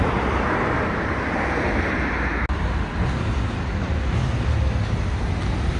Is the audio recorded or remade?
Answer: recorded